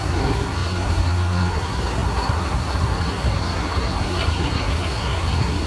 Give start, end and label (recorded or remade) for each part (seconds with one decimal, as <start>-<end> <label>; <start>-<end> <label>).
0.0-5.7 remade